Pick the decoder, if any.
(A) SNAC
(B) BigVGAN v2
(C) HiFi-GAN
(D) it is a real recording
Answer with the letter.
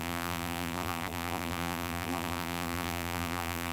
B